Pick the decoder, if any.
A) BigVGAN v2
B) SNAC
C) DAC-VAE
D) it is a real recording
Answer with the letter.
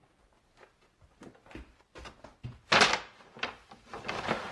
D